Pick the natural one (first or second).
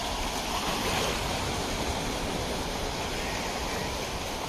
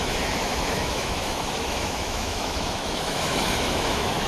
first